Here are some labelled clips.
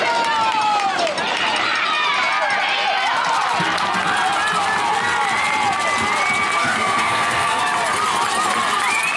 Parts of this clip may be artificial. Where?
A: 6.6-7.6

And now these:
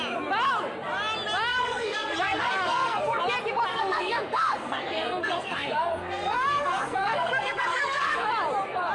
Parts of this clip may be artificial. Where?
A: 1.5-3.2; 3.7-8.3

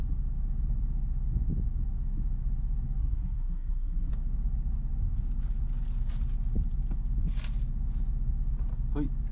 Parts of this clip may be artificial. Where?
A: 3.0-4.1

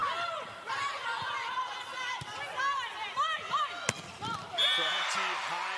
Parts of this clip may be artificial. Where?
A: none

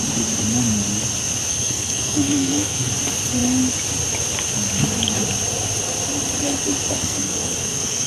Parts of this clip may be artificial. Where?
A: 1.5-2.9; 7.0-8.1

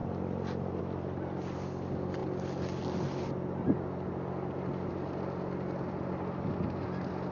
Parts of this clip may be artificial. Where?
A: none